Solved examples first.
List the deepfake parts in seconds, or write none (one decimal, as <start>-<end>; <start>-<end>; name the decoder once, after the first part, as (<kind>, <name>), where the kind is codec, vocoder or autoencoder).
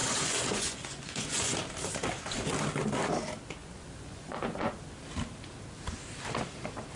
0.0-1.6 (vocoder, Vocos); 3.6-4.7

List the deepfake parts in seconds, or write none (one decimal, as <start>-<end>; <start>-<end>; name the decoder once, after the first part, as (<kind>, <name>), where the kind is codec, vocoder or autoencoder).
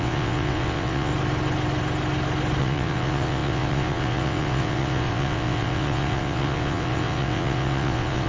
0.0-1.1 (vocoder, WaveNeXt); 2.6-8.3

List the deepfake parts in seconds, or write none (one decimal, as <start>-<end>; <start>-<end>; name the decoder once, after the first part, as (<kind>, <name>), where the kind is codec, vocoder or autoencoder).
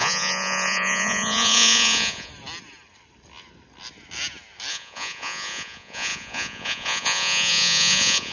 0.0-2.3 (vocoder, Vocos); 4.7-8.3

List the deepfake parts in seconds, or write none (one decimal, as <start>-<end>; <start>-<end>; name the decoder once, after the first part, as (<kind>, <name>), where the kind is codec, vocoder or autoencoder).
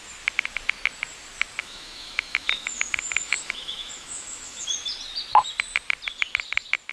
1.6-4.7 (autoencoder, DAC-VAE)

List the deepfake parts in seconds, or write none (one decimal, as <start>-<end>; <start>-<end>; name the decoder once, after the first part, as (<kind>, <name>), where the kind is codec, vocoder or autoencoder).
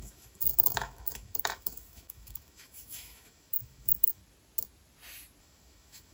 0.0-4.2 (autoencoder, DAC-VAE); 5.4-6.1